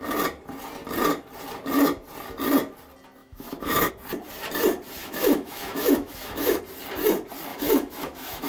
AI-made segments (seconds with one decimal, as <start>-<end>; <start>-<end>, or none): 3.2-3.9; 5.0-6.6; 7.5-8.5